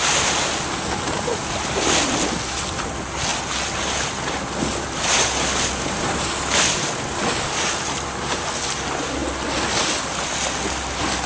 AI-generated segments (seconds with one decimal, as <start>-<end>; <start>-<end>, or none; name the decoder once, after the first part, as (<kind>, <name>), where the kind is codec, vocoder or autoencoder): none